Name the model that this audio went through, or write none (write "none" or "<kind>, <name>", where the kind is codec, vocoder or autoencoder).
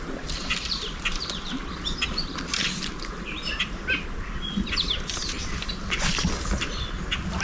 none